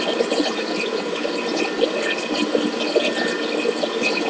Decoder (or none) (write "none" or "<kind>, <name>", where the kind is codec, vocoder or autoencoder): none